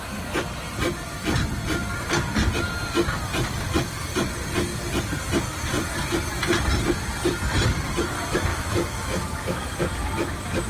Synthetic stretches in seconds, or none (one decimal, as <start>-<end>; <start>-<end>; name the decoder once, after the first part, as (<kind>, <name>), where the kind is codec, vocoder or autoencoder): 8.5-9.6 (autoencoder, DAC-VAE)